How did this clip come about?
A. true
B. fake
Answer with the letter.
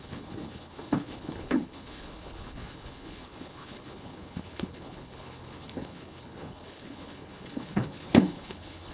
B